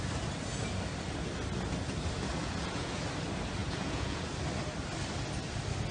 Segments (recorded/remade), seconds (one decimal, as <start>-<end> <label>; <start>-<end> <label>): 0.0-2.4 recorded; 2.4-3.0 remade; 3.0-3.6 recorded; 3.6-4.2 remade; 4.2-5.9 recorded